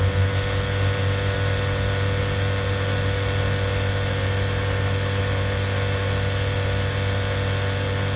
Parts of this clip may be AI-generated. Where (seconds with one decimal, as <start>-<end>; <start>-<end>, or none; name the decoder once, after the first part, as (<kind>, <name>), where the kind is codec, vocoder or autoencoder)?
none

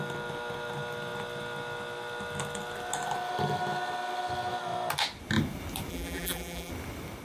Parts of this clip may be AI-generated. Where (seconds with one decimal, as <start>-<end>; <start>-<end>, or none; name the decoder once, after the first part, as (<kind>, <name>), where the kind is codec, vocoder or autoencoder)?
5.9-6.7 (vocoder, BigVGAN v2)

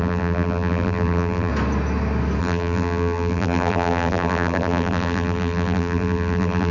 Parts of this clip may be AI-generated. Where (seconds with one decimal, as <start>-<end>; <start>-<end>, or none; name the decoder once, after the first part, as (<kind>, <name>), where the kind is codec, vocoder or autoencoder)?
0.0-1.5 (vocoder, BigVGAN v2); 2.4-6.7

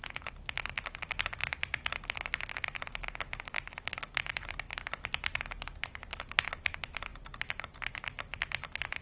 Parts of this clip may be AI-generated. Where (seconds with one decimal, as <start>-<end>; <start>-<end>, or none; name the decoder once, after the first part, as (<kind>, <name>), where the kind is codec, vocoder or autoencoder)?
none